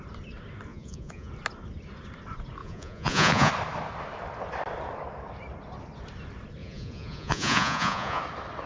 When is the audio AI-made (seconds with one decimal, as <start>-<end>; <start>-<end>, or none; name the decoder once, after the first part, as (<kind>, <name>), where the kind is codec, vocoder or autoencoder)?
0.7-1.3 (vocoder, Vocos); 2.6-3.5; 6.6-8.2